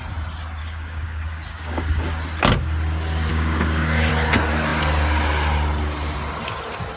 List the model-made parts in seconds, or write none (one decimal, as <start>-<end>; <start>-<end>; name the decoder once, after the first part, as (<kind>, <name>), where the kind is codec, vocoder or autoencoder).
0.6-2.1 (codec, DAC); 3.3-4.1